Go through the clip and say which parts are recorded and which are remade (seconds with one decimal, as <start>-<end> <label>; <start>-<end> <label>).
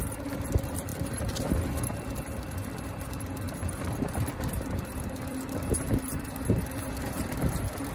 0.0-0.9 remade; 0.9-2.4 recorded; 2.4-7.9 remade